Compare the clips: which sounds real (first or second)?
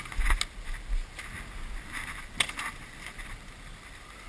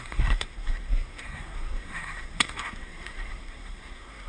first